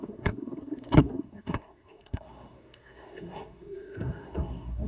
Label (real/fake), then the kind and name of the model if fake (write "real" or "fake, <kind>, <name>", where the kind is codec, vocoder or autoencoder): fake, codec, SNAC